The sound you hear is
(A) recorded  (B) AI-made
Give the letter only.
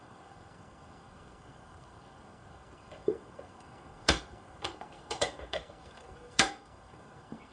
B